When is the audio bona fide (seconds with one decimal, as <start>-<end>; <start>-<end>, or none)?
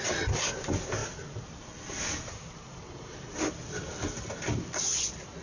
0.0-5.4